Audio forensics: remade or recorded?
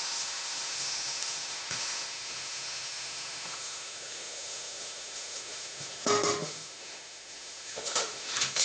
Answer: remade